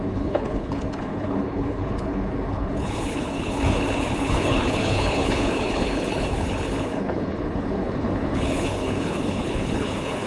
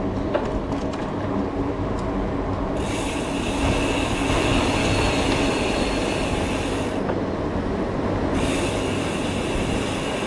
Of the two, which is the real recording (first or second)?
second